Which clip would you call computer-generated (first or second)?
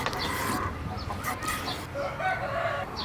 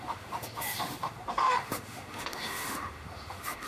second